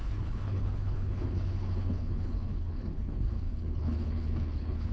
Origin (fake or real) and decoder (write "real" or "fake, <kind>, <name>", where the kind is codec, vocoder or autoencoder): fake, codec, HILCodec